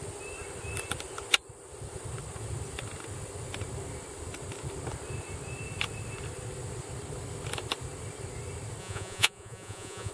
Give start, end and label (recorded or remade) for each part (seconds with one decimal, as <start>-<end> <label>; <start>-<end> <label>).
0.0-8.8 recorded; 8.8-10.1 remade